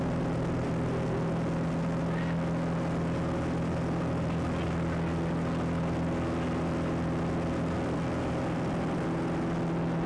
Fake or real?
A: real